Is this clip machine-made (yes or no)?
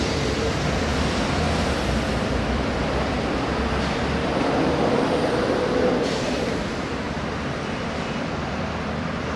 yes